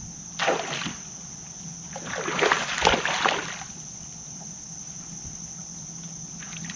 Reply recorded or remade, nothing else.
recorded